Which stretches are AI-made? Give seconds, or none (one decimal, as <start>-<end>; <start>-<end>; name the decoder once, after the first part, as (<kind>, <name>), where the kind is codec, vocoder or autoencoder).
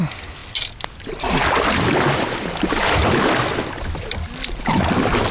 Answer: none